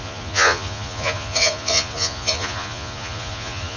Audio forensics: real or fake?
fake